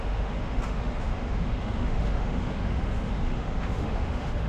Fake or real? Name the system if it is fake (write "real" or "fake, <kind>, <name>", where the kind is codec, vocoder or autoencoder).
fake, autoencoder, DAC-VAE